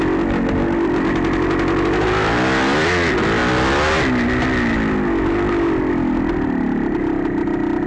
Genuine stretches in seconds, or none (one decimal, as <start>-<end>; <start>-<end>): 0.0-7.9